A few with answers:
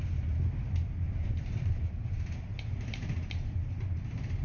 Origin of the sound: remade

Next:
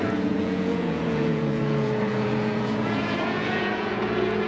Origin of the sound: remade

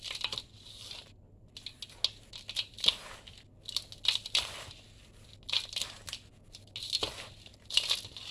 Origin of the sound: recorded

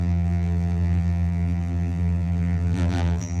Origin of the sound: remade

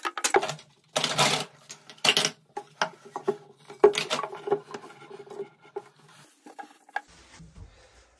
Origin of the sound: recorded